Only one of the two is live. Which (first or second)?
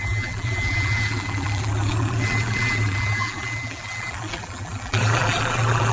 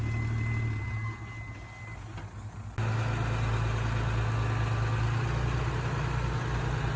second